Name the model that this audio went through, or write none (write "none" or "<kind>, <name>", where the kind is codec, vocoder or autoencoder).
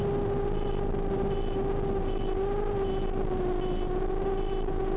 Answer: none